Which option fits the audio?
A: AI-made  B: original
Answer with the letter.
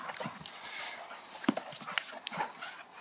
B